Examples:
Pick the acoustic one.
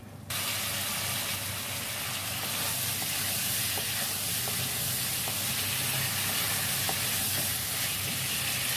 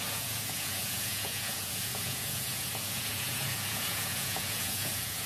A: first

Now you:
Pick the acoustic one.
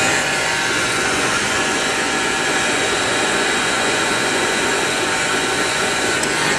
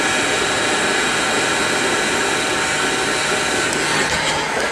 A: second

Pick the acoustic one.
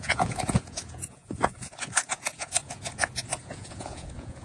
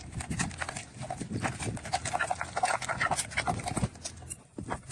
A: second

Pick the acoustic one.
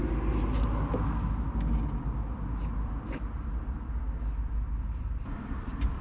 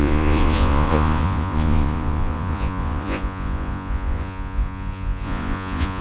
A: first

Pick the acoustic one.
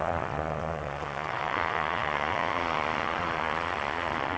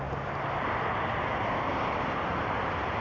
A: second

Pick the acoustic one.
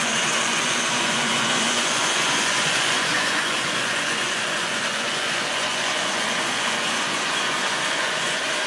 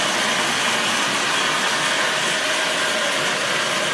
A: second